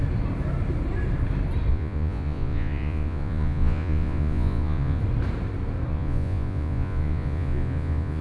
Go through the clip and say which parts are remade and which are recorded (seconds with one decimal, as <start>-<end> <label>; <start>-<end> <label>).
0.0-1.7 recorded; 1.7-5.0 remade; 5.0-5.9 recorded; 5.9-8.2 remade